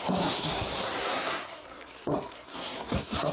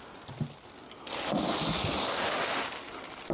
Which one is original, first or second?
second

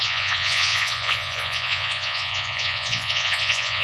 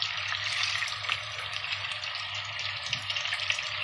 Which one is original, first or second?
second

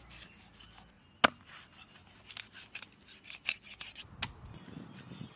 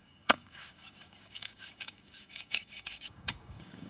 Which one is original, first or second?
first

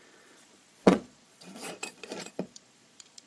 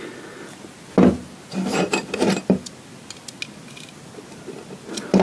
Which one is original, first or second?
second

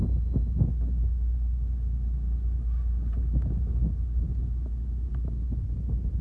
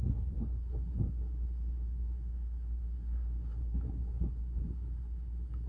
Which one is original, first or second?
first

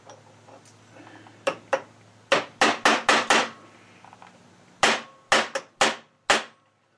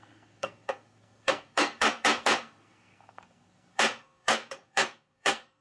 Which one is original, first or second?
first